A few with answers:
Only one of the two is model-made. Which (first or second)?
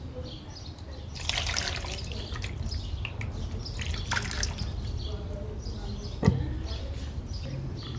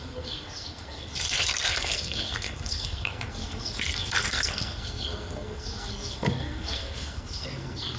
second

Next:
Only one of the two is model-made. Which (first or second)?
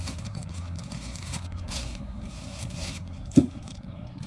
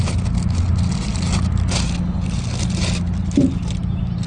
first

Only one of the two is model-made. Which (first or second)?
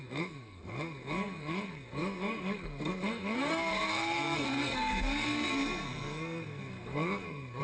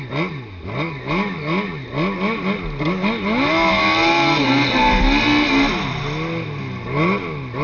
first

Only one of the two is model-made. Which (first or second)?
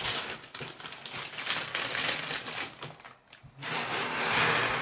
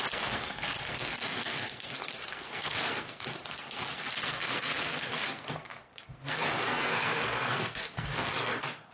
second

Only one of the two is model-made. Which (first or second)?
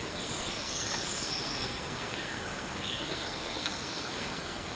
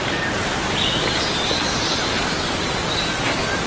first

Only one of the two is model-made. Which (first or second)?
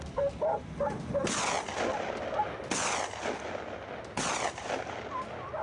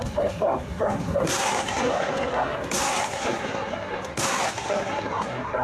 second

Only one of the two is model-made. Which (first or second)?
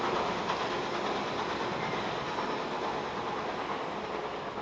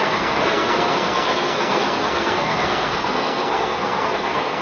second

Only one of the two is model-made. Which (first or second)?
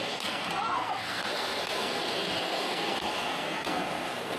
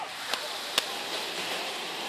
first